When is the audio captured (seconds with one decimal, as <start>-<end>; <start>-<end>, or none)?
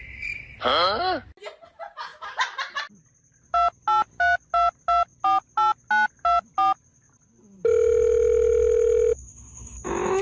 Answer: 0.0-10.2